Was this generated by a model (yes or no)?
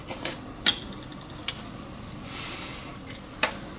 no